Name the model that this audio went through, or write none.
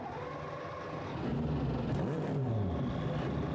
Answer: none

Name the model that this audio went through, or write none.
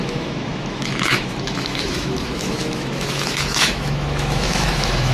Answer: autoencoder, DAC-VAE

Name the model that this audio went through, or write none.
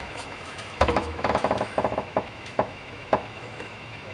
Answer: autoencoder, DAC-VAE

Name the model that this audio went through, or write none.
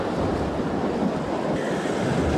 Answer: none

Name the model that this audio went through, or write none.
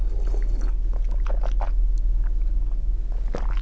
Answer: none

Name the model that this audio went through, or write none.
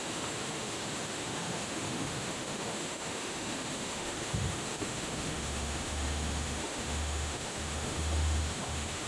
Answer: autoencoder, DAC-VAE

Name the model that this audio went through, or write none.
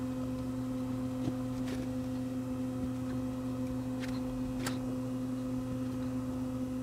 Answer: none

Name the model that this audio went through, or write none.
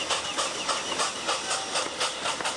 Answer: none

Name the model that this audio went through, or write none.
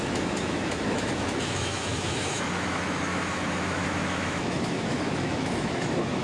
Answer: autoencoder, DAC-VAE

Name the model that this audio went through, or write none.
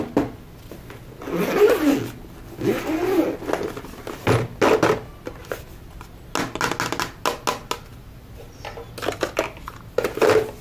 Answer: none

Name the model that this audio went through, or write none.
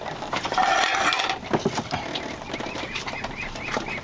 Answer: none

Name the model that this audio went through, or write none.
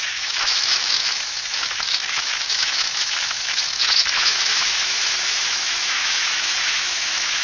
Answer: autoencoder, DAC-VAE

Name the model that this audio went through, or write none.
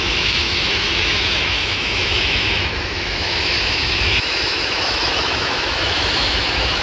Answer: autoencoder, DAC-VAE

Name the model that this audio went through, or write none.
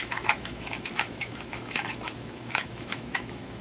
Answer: autoencoder, DAC-VAE